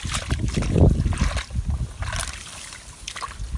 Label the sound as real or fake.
real